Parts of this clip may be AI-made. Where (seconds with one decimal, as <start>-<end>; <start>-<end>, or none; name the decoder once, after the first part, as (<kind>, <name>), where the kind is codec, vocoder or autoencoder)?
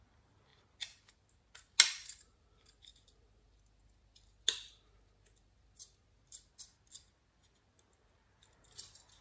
none